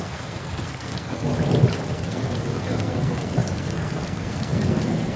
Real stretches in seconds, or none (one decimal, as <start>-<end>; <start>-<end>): 1.3-1.9